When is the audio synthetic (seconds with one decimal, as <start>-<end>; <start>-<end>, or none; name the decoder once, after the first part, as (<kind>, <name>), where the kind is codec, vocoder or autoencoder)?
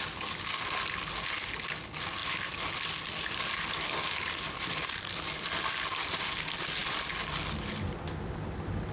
none